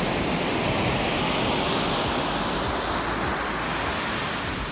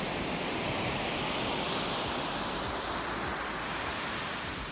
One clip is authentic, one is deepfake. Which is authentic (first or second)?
first